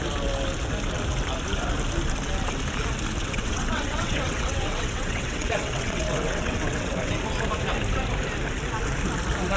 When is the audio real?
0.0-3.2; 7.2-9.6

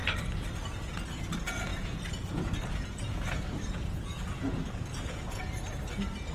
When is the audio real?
0.0-1.7; 5.4-6.3

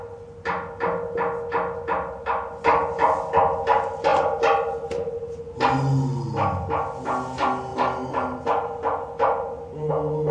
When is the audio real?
0.0-10.3